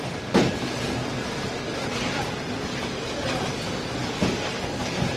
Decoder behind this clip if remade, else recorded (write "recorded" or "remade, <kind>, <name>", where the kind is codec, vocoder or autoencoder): recorded